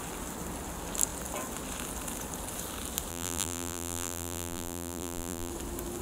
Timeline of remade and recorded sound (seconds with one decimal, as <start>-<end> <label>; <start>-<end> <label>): 0.0-3.1 recorded; 3.1-5.5 remade; 5.5-6.0 recorded